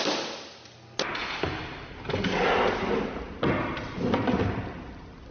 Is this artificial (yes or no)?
no